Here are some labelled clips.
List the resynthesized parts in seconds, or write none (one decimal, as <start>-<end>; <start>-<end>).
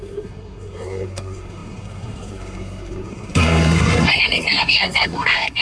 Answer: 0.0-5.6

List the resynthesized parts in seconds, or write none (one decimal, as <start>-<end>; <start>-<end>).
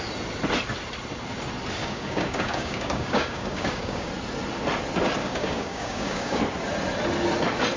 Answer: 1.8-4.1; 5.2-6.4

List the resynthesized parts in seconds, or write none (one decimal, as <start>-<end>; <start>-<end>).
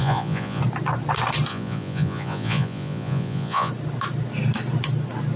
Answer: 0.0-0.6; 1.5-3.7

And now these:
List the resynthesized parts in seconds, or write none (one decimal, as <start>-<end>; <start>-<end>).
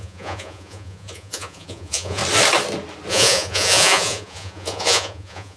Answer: 0.0-2.2; 3.1-5.6